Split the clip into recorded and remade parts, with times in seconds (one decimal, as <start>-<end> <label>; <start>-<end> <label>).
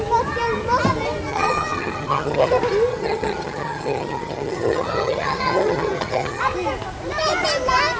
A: 0.0-1.3 recorded; 1.3-2.5 remade; 2.5-2.9 recorded; 2.9-6.4 remade; 6.4-8.0 recorded